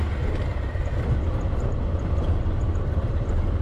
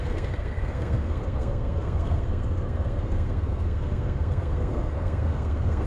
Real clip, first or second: first